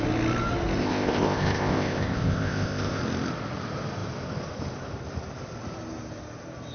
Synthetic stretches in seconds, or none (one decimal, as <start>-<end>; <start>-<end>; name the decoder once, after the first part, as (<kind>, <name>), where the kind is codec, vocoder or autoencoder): 0.8-3.0 (codec, ZipCodec)